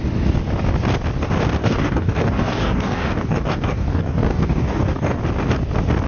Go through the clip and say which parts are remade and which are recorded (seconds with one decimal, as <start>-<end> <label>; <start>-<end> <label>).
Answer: 0.0-1.6 recorded; 1.6-5.2 remade; 5.2-6.1 recorded